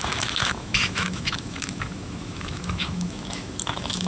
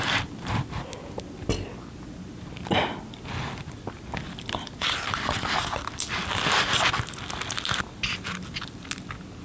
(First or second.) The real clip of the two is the second